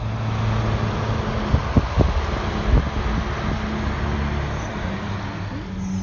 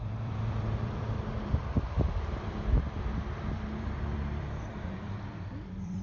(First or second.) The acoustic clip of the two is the first